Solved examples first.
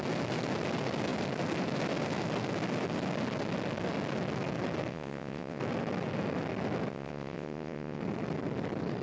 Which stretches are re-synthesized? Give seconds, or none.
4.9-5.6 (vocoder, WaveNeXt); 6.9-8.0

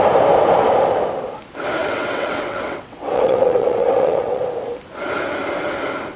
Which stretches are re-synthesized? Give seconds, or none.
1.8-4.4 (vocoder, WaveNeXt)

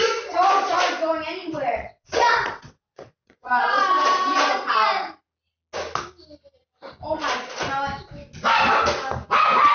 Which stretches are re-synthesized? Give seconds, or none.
1.4-5.1 (vocoder, WaveNeXt)

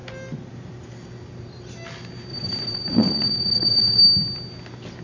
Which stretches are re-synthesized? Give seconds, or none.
2.3-4.0 (vocoder, WaveNeXt)